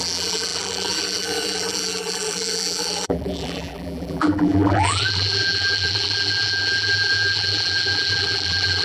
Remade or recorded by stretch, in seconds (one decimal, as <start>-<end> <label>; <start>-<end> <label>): 0.0-8.8 remade